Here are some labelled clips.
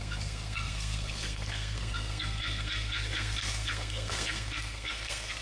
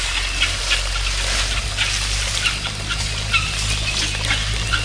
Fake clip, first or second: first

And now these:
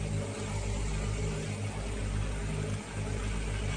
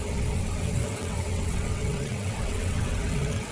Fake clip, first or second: second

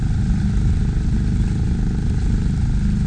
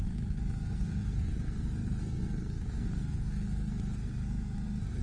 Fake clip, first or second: second